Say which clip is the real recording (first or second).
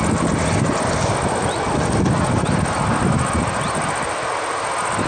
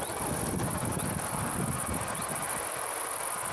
first